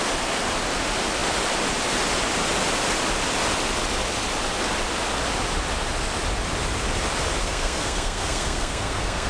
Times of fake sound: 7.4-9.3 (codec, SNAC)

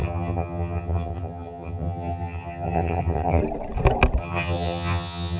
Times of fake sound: 0.0-3.4 (vocoder, HiFi-GAN); 4.2-5.4

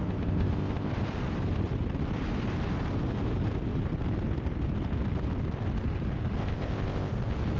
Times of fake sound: 0.0-0.9 (codec, ZipCodec); 6.4-7.1

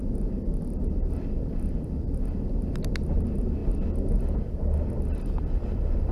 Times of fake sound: none

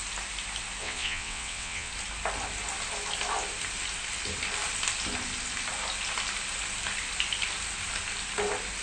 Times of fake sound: 0.8-1.9 (vocoder, WaveNeXt)

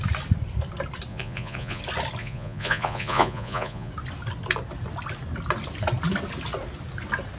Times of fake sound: 1.1-1.8 (vocoder, Vocos); 2.2-3.9

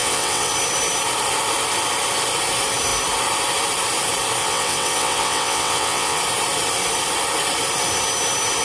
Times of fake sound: 0.0-0.5 (vocoder, WaveNeXt); 4.4-6.2

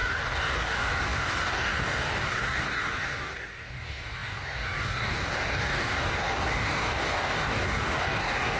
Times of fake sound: 0.0-8.6 (codec, DAC)